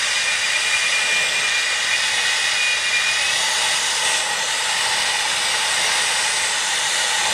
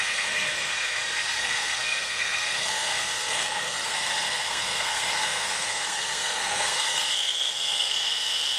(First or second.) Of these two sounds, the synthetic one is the second